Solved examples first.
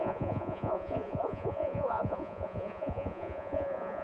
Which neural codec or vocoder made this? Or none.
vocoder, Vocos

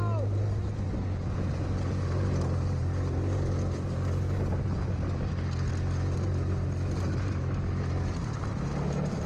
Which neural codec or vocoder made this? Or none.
none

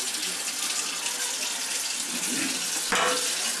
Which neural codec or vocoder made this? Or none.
none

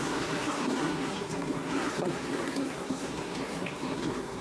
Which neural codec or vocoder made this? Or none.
codec, SNAC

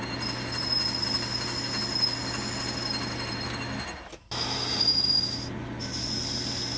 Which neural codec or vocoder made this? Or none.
none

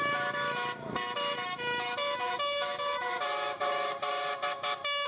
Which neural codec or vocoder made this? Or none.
autoencoder, DAC-VAE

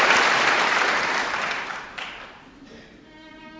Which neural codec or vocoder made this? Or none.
none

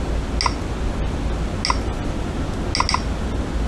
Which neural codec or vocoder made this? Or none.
none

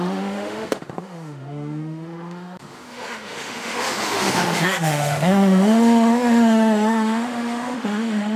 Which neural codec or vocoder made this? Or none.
autoencoder, DAC-VAE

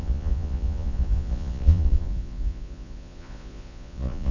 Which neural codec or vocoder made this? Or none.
vocoder, Vocos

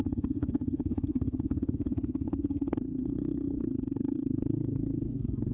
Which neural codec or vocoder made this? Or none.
codec, SNAC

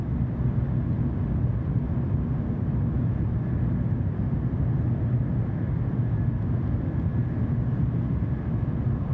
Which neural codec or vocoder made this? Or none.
none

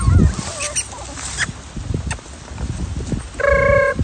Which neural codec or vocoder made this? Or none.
none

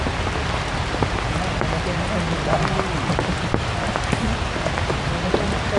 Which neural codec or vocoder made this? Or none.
none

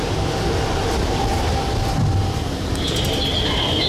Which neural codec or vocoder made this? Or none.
none